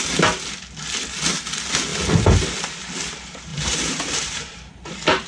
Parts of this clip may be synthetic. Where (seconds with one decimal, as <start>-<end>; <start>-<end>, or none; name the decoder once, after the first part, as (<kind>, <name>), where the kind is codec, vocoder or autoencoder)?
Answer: 3.5-5.3 (vocoder, BigVGAN v2)